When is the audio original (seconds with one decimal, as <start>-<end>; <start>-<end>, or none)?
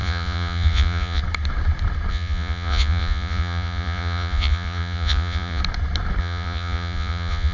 1.2-2.1; 5.6-6.2